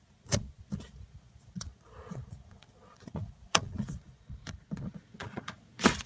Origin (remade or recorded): remade